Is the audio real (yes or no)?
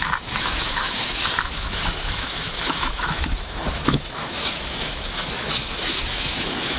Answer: no